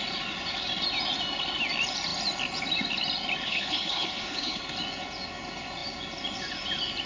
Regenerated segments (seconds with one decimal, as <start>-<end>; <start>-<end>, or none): 3.5-4.6